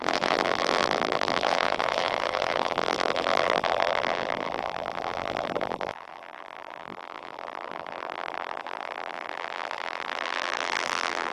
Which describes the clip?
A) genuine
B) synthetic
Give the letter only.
B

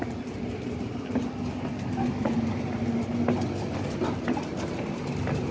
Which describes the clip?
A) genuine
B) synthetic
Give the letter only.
A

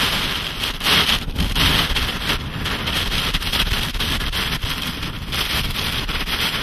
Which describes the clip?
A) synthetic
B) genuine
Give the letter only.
B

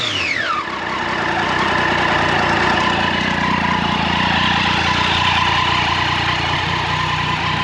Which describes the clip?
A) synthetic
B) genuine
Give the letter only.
B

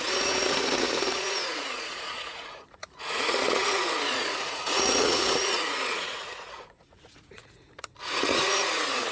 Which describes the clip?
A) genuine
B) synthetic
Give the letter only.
B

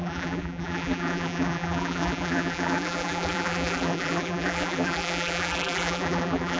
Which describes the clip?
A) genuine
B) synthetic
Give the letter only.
B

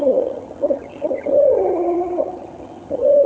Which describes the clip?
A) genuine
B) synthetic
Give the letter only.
B